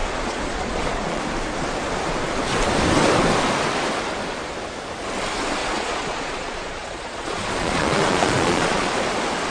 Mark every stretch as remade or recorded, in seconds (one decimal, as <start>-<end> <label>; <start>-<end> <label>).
0.0-1.2 remade; 1.2-5.6 recorded; 5.6-9.0 remade; 9.0-9.5 recorded